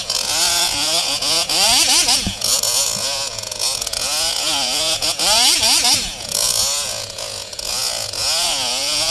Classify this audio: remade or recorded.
remade